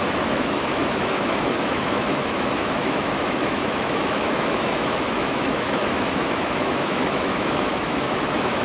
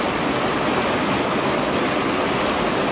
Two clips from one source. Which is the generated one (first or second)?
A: first